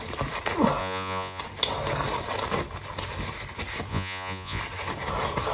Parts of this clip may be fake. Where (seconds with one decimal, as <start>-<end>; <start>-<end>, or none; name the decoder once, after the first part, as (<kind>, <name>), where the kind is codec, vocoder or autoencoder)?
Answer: 0.8-1.4 (vocoder, Vocos); 3.9-4.6